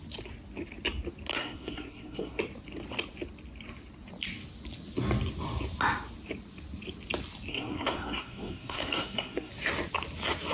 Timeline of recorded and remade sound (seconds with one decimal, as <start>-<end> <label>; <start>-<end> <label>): 0.0-1.3 recorded; 1.3-2.4 remade; 2.4-7.5 recorded; 7.5-9.5 remade; 9.5-10.5 recorded

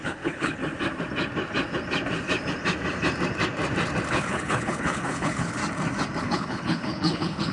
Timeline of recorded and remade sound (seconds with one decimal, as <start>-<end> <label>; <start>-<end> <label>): 0.0-0.6 remade; 0.6-4.1 recorded; 4.1-5.6 remade; 5.6-6.2 recorded; 6.2-7.5 remade

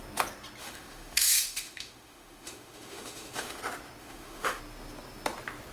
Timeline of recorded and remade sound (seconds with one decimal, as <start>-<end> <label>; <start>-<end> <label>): 0.0-0.6 recorded; 0.6-3.6 remade; 3.6-4.0 recorded; 4.0-4.6 remade; 4.6-5.7 recorded

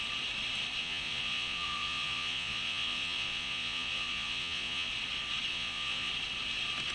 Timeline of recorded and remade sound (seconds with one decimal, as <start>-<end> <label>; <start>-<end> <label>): 0.0-0.8 recorded; 0.8-4.9 remade; 4.9-5.5 recorded; 5.5-6.1 remade; 6.1-6.9 recorded